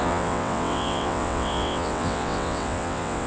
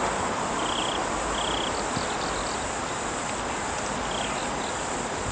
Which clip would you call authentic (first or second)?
second